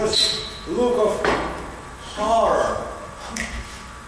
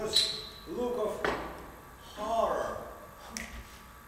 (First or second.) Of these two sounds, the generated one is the first